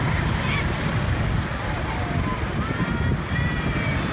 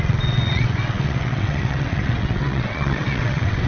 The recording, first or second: first